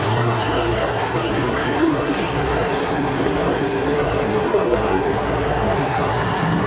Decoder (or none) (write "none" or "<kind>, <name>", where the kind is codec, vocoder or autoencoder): codec, SNAC